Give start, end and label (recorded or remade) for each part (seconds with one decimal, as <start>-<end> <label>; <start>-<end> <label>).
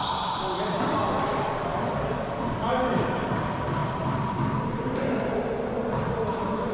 0.0-1.3 recorded; 1.3-3.3 remade; 3.3-6.7 recorded